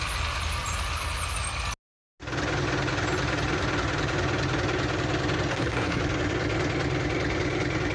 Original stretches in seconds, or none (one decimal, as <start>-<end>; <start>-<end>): 0.0-5.5; 6.0-7.9